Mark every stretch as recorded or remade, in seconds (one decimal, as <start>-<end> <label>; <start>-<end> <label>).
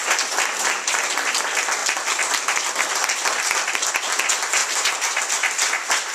0.0-1.0 remade; 1.0-4.6 recorded; 4.6-5.2 remade; 5.2-6.1 recorded